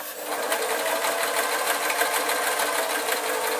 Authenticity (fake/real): real